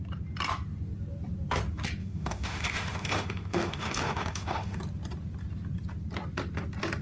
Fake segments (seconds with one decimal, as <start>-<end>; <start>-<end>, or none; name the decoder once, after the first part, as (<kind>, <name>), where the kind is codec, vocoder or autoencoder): 2.0-4.8 (autoencoder, DAC-VAE)